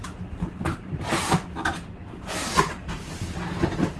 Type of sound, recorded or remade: remade